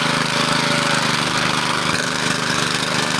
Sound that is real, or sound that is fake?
fake